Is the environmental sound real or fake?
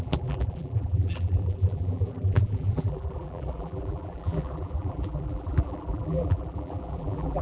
fake